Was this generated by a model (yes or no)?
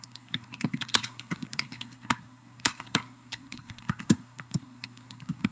yes